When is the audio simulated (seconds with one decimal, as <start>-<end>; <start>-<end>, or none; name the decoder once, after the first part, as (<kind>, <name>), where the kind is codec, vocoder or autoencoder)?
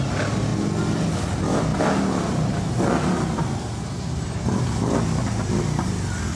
none